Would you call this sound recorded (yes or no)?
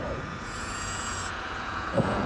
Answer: no